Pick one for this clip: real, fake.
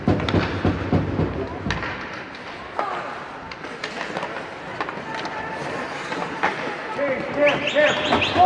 real